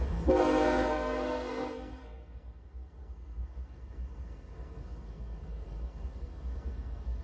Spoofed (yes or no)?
yes